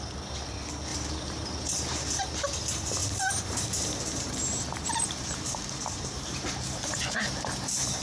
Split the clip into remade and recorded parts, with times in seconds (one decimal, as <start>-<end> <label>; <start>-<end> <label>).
0.0-0.9 recorded; 0.9-2.2 remade; 2.2-3.0 recorded; 3.0-7.5 remade; 7.5-8.0 recorded